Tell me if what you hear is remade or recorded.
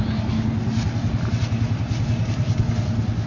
recorded